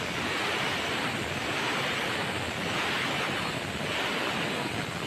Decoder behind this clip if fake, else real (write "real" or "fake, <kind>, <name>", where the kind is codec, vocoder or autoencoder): fake, vocoder, BigVGAN v2